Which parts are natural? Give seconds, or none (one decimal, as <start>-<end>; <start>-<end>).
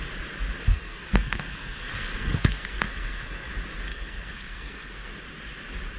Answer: 0.0-0.7; 3.5-3.9; 5.1-6.0